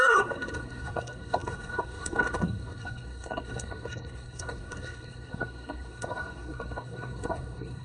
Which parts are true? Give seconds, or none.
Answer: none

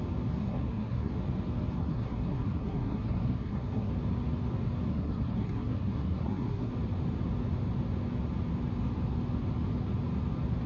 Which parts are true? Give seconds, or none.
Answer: 0.0-0.4; 1.1-1.8; 3.9-4.9; 6.7-10.7

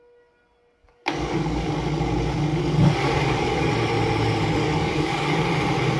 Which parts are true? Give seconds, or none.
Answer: 0.0-0.8; 1.7-2.5; 3.7-4.6; 5.5-6.0

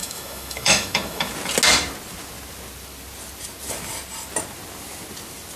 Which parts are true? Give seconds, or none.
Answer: 1.3-5.6

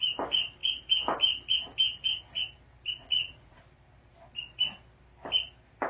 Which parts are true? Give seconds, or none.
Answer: 0.0-3.0; 3.6-5.9

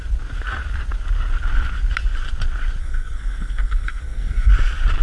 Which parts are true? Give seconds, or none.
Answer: 0.0-2.8; 4.5-5.0

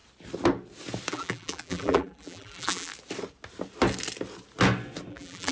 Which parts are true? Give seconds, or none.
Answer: 0.0-1.1; 2.9-5.1